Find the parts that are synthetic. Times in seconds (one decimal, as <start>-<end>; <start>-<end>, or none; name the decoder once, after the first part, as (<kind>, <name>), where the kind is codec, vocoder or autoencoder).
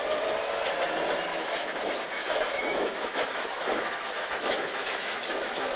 1.3-1.8 (autoencoder, DAC-VAE); 2.2-5.8